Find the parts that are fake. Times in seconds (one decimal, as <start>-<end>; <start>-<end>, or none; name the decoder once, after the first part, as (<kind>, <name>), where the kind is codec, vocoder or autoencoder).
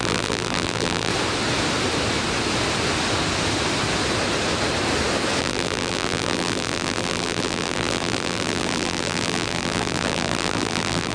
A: 0.0-1.1 (vocoder, BigVGAN v2); 5.4-11.1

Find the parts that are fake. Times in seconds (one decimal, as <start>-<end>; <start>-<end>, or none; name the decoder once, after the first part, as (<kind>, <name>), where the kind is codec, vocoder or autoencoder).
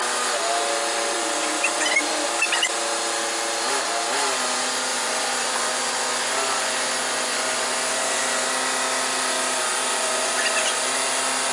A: 4.9-8.5 (vocoder, Vocos); 9.8-10.8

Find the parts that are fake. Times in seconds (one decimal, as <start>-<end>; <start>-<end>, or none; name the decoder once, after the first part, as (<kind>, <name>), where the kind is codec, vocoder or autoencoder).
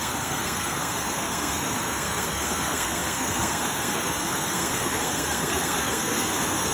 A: 0.0-6.7 (codec, SNAC)